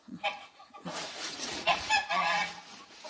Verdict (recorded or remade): remade